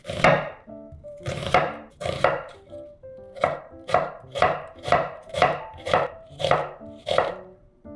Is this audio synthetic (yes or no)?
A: yes